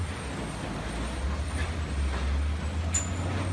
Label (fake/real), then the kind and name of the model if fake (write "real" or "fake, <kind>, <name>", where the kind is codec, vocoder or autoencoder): real